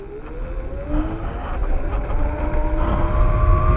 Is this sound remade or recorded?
recorded